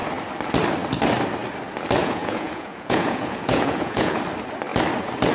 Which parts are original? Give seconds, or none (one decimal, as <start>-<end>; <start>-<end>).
0.0-2.0; 4.2-5.3